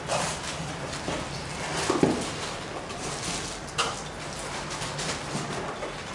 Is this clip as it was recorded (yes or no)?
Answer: yes